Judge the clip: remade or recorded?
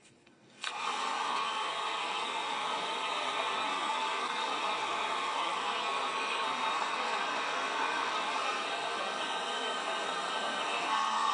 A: remade